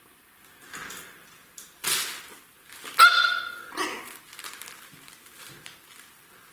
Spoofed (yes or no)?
no